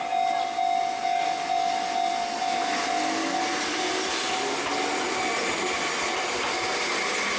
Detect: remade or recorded recorded